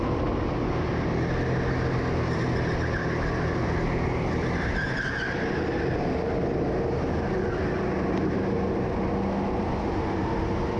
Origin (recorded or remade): recorded